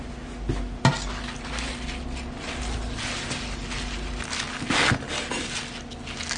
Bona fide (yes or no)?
yes